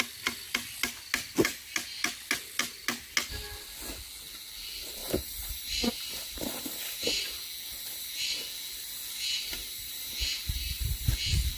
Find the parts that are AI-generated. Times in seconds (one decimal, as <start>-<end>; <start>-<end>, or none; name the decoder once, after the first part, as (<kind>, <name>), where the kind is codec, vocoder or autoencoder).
5.0-6.6 (vocoder, BigVGAN v2)